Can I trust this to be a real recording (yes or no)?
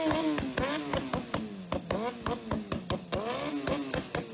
yes